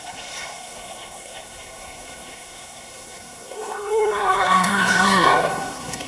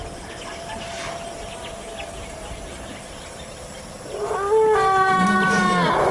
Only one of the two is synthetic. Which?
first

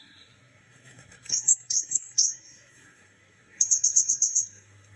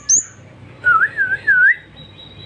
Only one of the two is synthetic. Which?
first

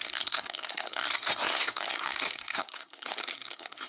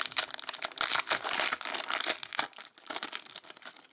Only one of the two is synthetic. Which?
first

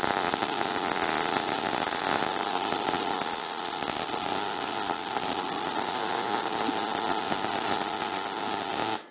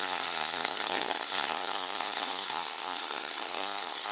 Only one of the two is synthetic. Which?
second